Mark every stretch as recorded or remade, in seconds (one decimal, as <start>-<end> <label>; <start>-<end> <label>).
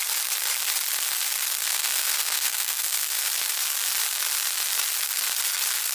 0.0-1.6 recorded; 1.6-3.1 remade; 3.1-5.9 recorded